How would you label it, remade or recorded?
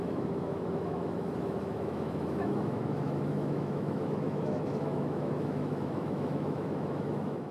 remade